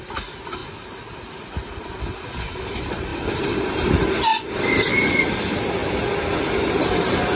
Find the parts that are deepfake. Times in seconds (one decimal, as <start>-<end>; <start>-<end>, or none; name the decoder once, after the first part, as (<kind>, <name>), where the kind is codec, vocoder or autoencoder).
none